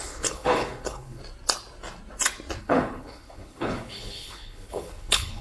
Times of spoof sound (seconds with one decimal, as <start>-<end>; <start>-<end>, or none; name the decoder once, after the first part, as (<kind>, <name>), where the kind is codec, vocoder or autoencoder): 0.0-1.2 (codec, HILCodec); 2.6-5.4